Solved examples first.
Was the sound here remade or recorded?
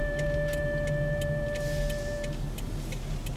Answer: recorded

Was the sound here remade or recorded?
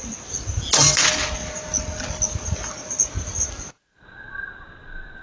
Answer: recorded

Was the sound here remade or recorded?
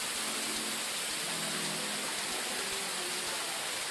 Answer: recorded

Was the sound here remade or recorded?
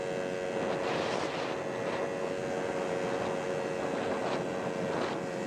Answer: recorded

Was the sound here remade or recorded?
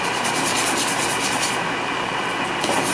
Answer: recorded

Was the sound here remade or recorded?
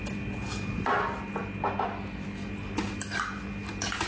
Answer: recorded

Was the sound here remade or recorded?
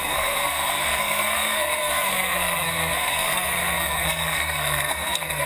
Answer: remade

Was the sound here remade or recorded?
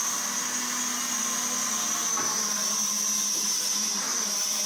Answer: recorded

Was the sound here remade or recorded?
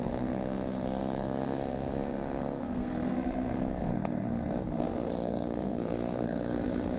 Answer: remade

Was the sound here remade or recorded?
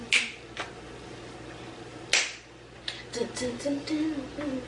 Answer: recorded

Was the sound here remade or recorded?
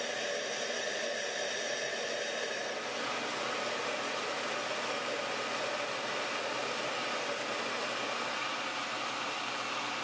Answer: recorded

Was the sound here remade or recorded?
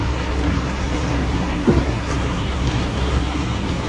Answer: remade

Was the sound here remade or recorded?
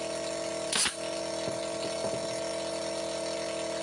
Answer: recorded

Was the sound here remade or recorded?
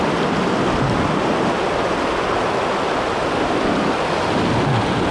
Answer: recorded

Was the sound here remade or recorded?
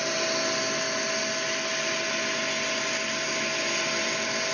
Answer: recorded